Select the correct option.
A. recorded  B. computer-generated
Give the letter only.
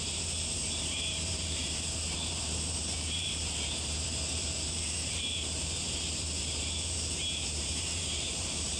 B